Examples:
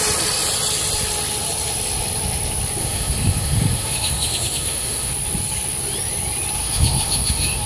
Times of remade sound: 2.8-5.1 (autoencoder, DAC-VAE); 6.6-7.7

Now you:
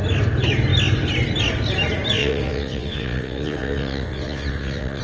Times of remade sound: 2.2-5.0 (vocoder, WaveNeXt)

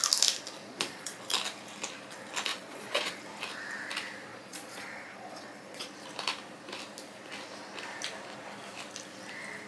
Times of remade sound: 0.6-1.2 (vocoder, Vocos); 2.5-3.2; 4.3-5.9

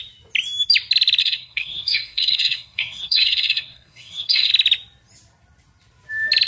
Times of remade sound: 1.2-4.5 (codec, SNAC)